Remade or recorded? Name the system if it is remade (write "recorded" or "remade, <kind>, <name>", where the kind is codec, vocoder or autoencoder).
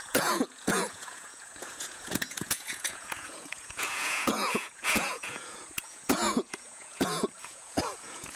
remade, vocoder, Vocos